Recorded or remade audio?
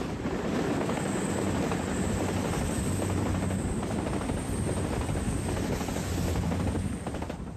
recorded